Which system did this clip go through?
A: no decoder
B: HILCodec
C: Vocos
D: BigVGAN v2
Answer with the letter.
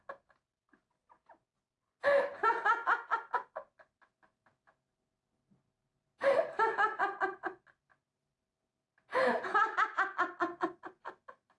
A